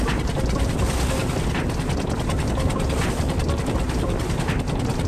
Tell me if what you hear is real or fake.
real